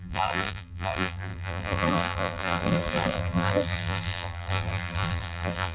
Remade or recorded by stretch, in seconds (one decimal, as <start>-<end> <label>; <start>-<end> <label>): 0.0-5.7 remade